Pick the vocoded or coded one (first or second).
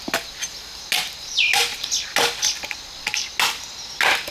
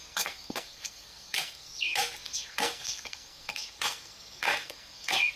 second